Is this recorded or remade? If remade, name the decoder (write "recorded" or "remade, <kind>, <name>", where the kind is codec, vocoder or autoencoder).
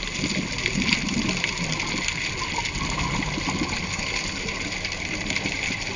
recorded